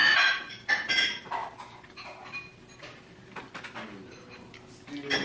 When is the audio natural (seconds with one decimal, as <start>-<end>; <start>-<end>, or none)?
0.7-5.2